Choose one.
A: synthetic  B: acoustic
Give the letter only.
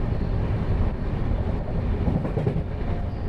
B